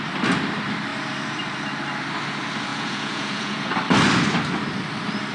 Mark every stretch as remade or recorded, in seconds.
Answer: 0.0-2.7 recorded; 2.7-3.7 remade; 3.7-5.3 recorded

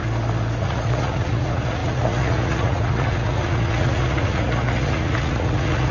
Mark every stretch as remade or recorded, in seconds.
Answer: 0.0-0.6 recorded; 0.6-5.9 remade

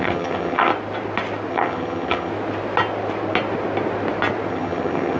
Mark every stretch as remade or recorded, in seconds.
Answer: 0.0-0.7 remade; 0.7-1.5 recorded; 1.5-2.3 remade; 2.3-4.5 recorded; 4.5-5.2 remade

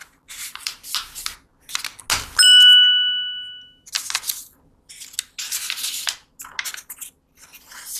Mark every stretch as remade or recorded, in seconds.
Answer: 0.0-0.9 remade; 0.9-8.0 recorded

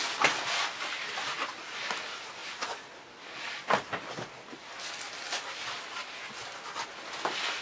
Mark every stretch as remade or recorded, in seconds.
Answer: 0.0-7.6 recorded

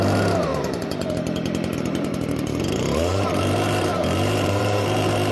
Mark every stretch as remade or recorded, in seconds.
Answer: 0.0-0.5 remade; 0.5-1.8 recorded; 1.8-5.3 remade

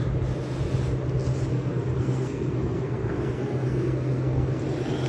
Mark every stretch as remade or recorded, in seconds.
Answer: 0.0-1.5 recorded; 1.5-4.6 remade; 4.6-5.1 recorded